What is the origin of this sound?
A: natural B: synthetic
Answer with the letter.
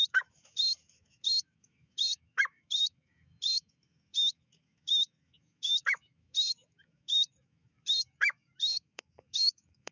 B